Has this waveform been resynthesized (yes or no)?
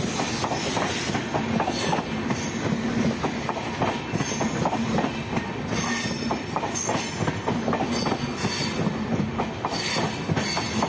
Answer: no